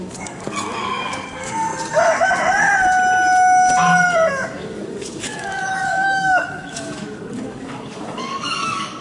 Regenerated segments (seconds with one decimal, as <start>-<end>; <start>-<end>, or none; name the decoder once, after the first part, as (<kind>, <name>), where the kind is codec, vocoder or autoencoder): 0.0-1.7 (codec, DAC); 4.3-9.0